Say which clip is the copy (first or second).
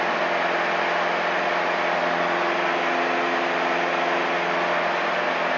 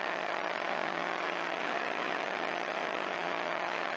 second